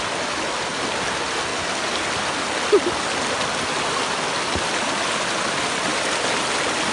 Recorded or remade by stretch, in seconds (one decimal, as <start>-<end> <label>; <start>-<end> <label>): 0.0-6.9 recorded